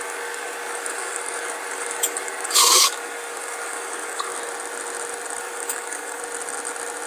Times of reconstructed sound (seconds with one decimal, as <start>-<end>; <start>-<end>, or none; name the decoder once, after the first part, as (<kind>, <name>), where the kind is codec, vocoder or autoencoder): 0.0-4.3 (codec, DAC); 5.4-6.2